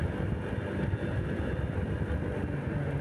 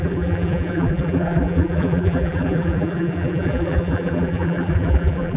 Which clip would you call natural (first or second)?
first